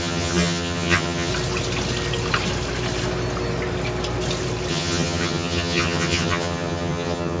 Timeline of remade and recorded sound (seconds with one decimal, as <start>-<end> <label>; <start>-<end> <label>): 0.0-1.3 remade; 1.3-4.7 recorded; 4.7-7.4 remade